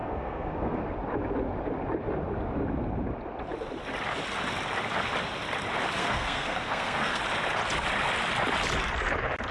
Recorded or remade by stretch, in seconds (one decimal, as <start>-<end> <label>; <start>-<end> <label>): 0.0-0.9 remade; 0.9-6.0 recorded; 6.0-7.2 remade; 7.2-9.5 recorded